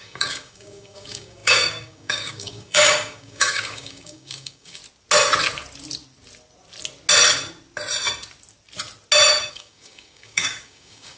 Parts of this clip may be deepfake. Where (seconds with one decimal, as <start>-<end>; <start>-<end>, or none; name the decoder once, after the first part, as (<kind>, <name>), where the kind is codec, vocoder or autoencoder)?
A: 0.0-4.8 (codec, DAC); 9.5-11.2